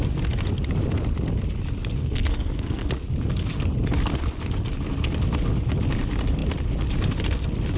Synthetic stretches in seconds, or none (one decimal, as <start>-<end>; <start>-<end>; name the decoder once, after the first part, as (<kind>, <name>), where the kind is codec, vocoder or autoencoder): 2.0-2.9 (codec, SNAC)